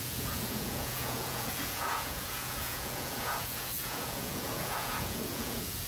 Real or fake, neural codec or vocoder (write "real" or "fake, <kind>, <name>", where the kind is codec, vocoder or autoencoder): fake, vocoder, Vocos